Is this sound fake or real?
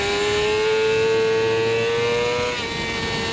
real